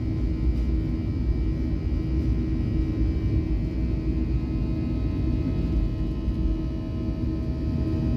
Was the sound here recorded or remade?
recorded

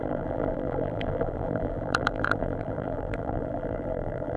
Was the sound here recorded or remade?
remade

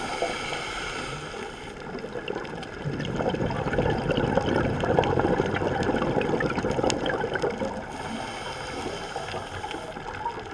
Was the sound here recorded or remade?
recorded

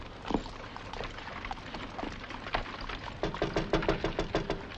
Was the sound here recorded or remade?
recorded